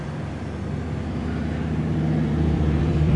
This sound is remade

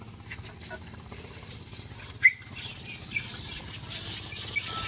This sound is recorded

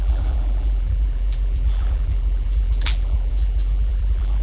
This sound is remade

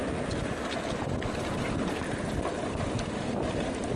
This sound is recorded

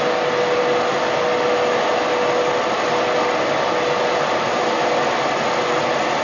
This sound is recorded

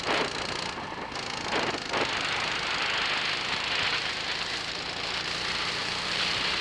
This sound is recorded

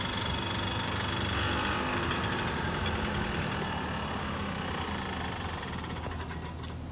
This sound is recorded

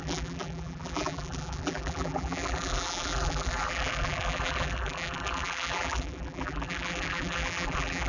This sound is remade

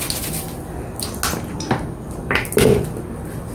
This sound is recorded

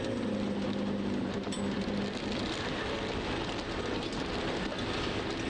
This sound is recorded